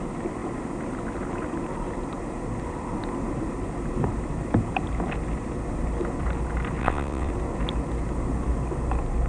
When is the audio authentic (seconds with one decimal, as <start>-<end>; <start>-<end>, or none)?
0.0-6.8; 7.3-9.3